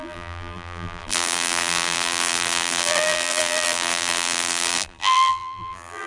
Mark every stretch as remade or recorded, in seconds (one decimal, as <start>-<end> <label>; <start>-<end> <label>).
0.0-6.1 remade